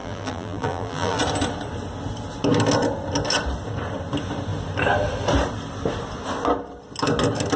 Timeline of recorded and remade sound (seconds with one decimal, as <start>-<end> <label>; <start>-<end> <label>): 0.0-1.2 remade; 1.2-7.6 recorded